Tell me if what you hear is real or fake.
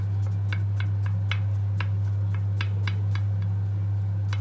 real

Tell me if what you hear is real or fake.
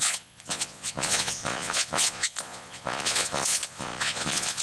fake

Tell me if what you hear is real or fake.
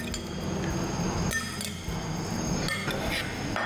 real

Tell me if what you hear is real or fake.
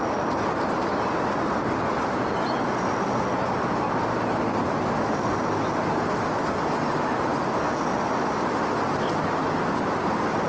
real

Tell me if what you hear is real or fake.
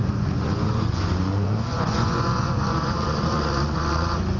fake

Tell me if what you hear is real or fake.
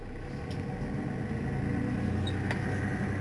real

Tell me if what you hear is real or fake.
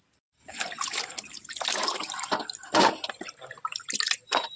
real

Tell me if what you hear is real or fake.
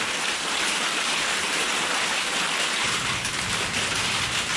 real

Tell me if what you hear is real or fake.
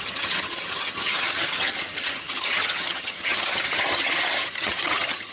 fake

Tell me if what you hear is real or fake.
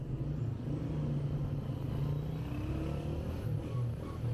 real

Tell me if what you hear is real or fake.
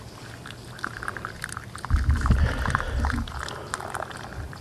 real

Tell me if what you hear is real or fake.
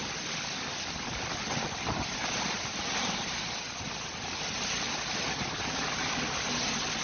real